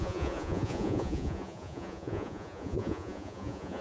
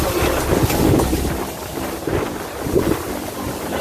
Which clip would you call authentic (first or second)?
second